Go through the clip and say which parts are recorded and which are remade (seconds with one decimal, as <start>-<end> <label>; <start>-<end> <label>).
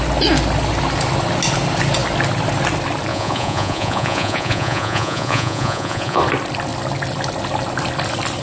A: 0.0-3.1 recorded; 3.1-6.2 remade; 6.2-8.4 recorded